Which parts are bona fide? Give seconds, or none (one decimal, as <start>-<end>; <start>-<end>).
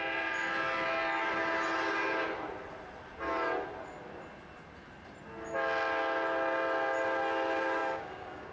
0.0-7.8